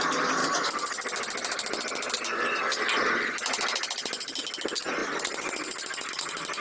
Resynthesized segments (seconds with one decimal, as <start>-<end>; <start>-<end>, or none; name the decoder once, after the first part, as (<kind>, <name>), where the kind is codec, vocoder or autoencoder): none